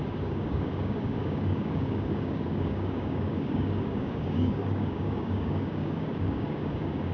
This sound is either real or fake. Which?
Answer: fake